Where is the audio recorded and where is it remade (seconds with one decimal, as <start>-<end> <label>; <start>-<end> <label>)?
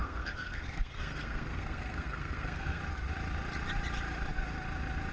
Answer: 0.0-2.8 remade; 2.8-5.1 recorded